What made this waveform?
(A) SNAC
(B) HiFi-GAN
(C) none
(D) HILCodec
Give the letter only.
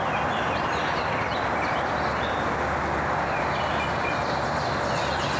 C